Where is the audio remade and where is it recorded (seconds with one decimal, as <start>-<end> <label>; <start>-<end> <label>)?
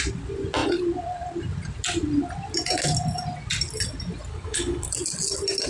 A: 0.0-4.3 recorded; 4.3-4.9 remade; 4.9-5.7 recorded